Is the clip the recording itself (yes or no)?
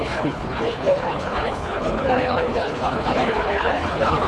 no